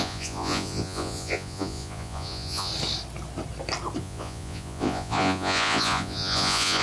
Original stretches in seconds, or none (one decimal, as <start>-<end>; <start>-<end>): 2.7-4.0